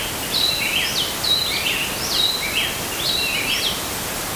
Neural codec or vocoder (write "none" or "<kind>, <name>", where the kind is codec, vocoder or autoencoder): none